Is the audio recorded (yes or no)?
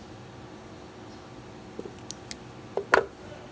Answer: yes